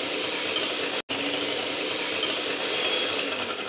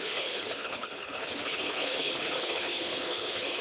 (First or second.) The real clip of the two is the first